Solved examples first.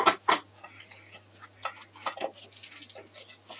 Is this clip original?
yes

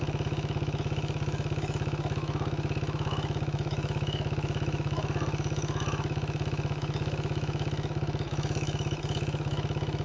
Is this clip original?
no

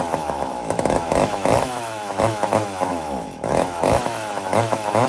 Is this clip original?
no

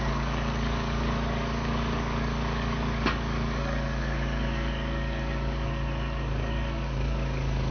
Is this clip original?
no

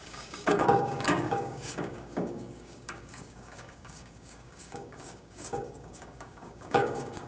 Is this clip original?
no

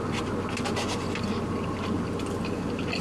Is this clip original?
yes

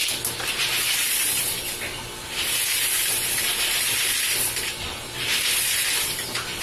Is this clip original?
yes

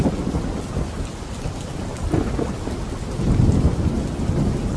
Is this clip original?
yes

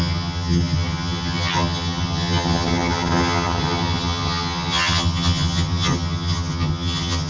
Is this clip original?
no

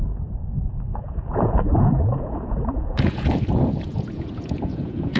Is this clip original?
no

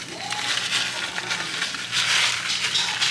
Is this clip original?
yes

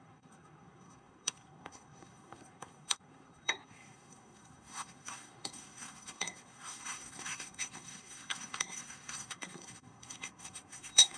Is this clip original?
no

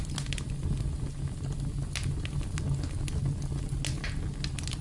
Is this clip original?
yes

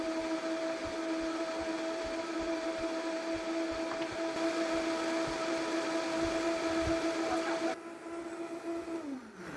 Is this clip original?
yes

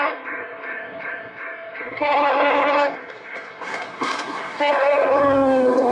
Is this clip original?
no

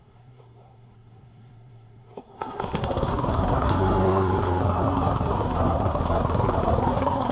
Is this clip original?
no